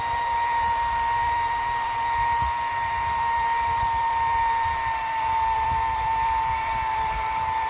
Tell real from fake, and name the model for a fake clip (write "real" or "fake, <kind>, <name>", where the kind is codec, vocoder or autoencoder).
fake, vocoder, BigVGAN v2